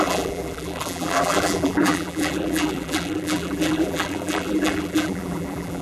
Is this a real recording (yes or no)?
no